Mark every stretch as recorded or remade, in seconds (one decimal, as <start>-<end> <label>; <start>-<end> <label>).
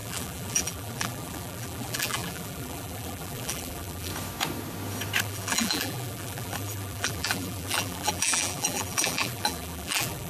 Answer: 0.0-4.1 remade; 4.1-5.2 recorded; 5.2-10.3 remade